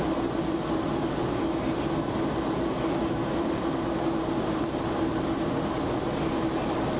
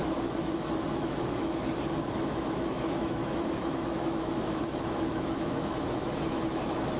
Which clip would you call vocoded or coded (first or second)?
second